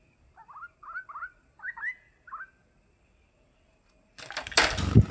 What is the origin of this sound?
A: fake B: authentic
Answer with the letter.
B